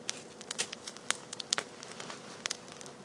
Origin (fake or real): real